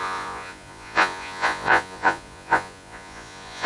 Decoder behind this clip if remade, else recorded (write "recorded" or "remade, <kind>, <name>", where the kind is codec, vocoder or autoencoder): remade, vocoder, Vocos